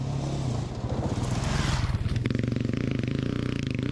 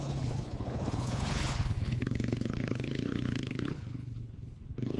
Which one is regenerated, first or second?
second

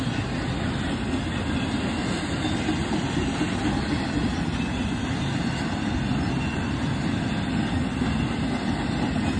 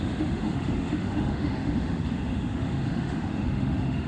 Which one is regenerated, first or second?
second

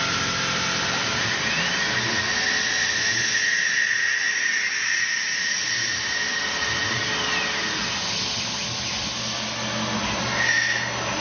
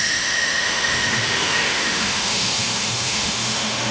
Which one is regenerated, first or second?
second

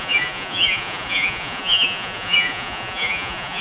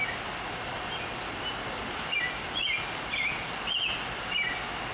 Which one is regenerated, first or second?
first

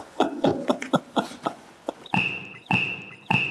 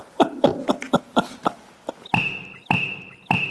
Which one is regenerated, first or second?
first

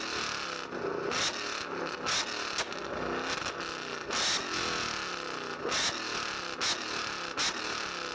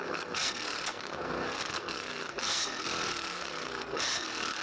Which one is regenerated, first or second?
second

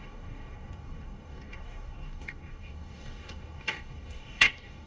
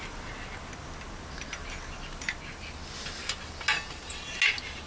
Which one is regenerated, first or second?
first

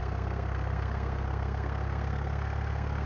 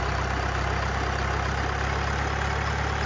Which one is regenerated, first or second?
first